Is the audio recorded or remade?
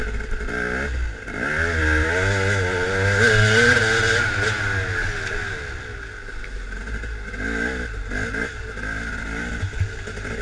recorded